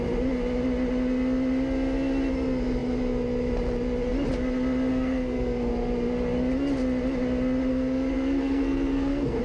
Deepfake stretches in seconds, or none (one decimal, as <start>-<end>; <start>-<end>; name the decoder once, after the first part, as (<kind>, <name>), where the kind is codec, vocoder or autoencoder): 4.9-5.7 (codec, SNAC); 7.7-9.4